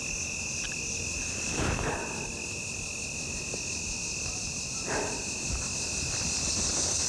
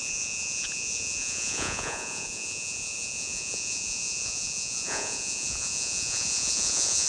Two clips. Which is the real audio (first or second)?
first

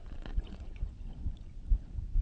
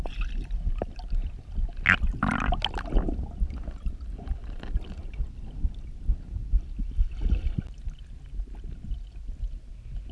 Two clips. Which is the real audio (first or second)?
second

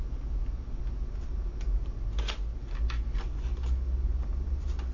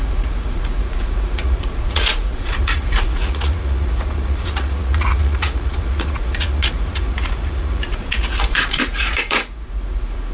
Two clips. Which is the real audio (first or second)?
first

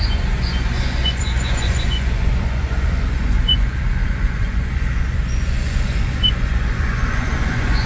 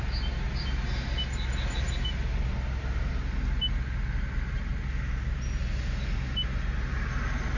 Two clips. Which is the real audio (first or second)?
second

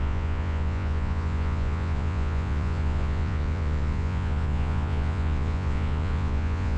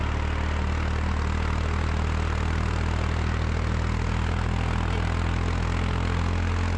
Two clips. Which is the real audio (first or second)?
second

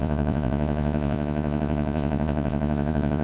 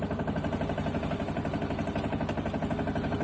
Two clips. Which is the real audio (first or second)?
second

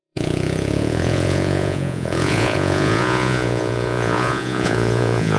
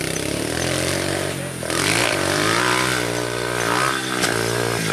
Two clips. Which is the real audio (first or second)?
second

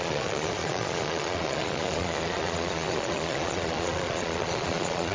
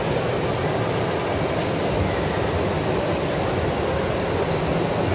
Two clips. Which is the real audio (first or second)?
second